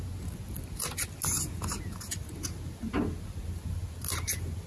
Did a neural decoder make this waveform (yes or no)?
no